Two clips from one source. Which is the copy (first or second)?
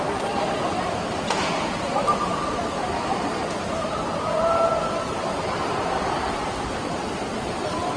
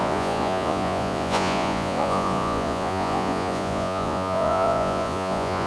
second